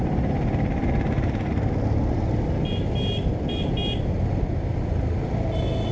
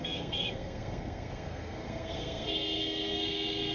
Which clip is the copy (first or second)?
second